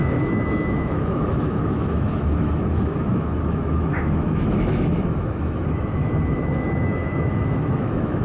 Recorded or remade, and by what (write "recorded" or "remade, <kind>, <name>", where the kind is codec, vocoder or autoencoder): remade, autoencoder, DAC-VAE